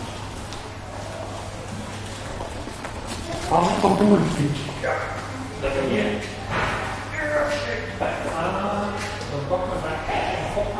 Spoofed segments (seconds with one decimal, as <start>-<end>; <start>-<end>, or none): 2.3-4.4